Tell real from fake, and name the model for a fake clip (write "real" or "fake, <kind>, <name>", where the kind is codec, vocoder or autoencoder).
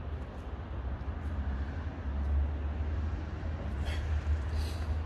real